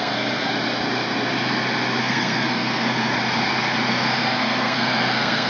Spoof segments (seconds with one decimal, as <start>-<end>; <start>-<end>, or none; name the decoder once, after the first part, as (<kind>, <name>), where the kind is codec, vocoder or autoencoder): 0.0-0.5 (codec, SNAC); 2.0-3.1; 3.9-5.5